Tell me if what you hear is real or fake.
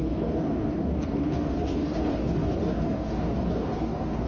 fake